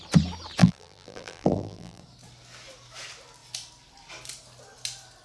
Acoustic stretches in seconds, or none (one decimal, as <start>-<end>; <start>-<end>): 0.0-0.6; 2.0-5.2